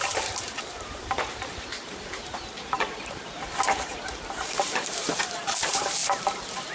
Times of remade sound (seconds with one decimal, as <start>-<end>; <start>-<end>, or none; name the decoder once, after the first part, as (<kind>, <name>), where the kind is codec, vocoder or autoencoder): 0.0-6.0 (vocoder, BigVGAN v2)